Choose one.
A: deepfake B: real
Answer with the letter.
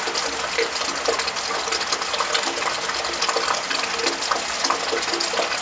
B